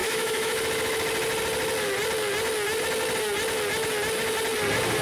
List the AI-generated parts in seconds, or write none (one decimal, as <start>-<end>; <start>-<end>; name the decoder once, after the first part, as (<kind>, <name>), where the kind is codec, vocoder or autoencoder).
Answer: 0.0-0.6 (autoencoder, DAC-VAE)